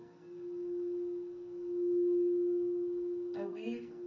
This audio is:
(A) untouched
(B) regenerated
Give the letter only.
B